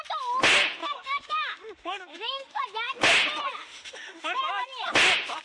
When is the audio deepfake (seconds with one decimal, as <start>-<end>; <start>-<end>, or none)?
0.8-2.6; 3.6-4.4